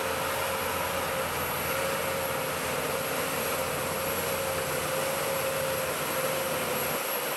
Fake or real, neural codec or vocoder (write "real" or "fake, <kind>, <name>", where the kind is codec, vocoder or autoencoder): real